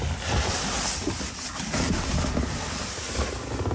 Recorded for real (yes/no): yes